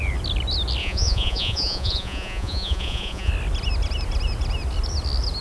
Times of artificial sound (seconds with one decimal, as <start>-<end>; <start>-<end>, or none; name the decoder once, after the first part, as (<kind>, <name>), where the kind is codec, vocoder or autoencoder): 0.8-3.3 (vocoder, Vocos)